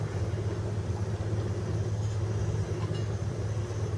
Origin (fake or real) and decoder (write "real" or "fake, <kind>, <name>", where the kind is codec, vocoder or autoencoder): real